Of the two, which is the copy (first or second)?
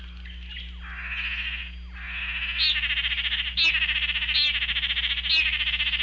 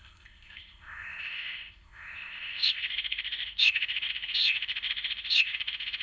second